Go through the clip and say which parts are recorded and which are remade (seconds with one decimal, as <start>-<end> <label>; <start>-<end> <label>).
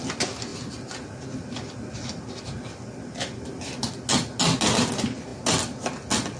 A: 0.0-6.4 recorded